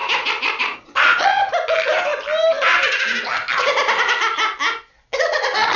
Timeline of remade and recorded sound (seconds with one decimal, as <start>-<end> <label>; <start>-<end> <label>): 0.0-0.6 recorded; 0.6-1.4 remade; 1.4-4.9 recorded; 4.9-5.8 remade

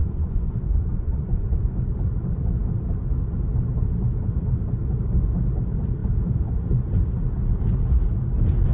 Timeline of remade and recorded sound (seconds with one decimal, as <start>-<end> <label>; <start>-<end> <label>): 0.0-1.6 remade; 1.6-8.7 recorded

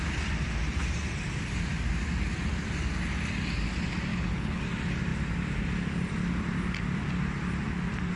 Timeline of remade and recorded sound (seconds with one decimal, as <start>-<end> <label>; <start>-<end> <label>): 0.0-4.1 recorded; 4.1-4.6 remade; 4.6-8.2 recorded

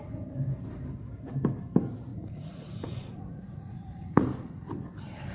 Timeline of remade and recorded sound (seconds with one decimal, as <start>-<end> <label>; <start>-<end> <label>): 0.0-2.1 recorded; 2.1-4.6 remade; 4.6-5.3 recorded

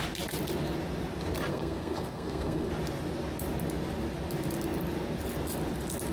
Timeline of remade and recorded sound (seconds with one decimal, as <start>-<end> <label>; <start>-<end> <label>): 0.0-1.5 recorded; 1.5-2.7 remade; 2.7-6.1 recorded

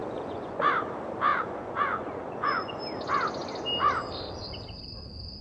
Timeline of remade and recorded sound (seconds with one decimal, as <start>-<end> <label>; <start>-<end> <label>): 0.0-0.6 remade; 0.6-1.3 recorded; 1.3-2.8 remade; 2.8-5.4 recorded

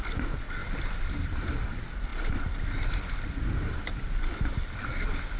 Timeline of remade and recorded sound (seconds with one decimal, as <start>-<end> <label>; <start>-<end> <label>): 0.0-5.4 recorded